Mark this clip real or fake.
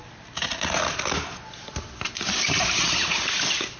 real